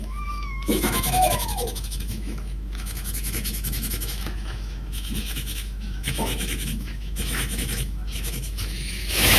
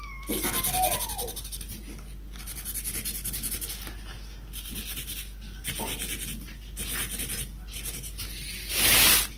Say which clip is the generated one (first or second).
first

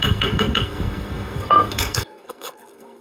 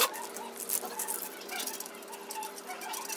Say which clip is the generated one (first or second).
first